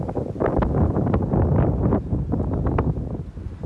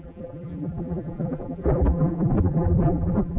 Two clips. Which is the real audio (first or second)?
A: first